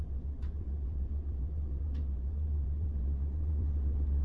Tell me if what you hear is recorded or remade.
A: remade